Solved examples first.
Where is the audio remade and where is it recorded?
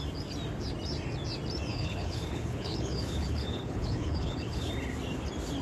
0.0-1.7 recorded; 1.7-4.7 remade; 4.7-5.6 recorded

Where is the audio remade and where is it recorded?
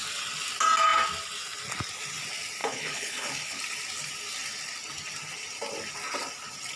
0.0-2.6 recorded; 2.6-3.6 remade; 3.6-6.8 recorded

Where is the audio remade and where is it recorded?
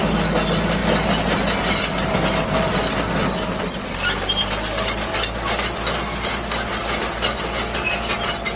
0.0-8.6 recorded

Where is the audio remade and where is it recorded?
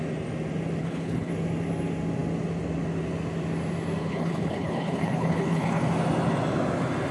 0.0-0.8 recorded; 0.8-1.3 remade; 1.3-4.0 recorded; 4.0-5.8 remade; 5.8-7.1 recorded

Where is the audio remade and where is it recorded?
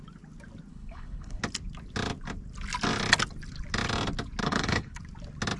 0.0-0.7 recorded; 0.7-1.4 remade; 1.4-4.4 recorded; 4.4-5.0 remade; 5.0-5.6 recorded